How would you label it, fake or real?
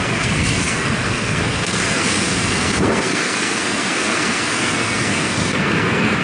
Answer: fake